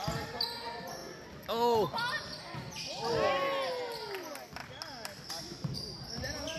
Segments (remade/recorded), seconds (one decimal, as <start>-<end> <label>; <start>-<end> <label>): 0.0-6.6 recorded